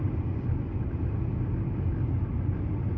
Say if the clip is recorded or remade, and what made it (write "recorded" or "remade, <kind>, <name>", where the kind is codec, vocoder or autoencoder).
recorded